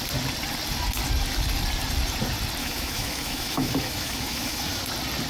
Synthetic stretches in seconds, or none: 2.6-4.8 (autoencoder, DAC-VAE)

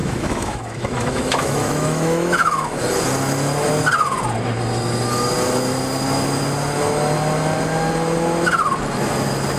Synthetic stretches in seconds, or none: 0.0-2.8 (autoencoder, DAC-VAE)

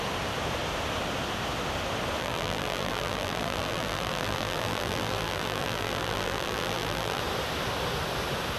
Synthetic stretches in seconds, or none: 2.2-7.2 (vocoder, BigVGAN v2)

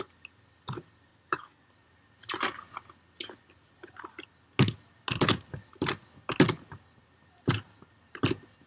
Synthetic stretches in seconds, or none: 1.1-1.7 (codec, DAC)